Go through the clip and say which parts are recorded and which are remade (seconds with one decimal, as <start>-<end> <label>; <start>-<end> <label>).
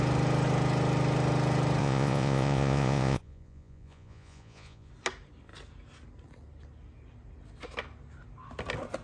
0.0-1.8 recorded; 1.8-4.9 remade; 4.9-9.0 recorded